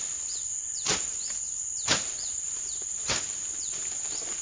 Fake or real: real